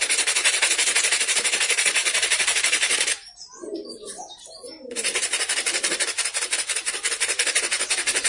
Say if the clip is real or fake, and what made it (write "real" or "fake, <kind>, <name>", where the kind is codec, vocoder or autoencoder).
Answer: fake, vocoder, BigVGAN v2